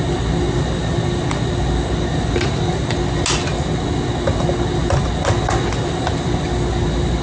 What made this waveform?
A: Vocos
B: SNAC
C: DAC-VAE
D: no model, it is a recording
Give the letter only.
D